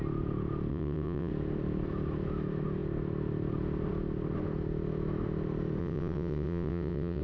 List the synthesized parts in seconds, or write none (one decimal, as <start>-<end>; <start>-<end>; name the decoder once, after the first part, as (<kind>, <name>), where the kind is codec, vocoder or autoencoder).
0.7-1.3 (vocoder, WaveNeXt); 5.8-7.2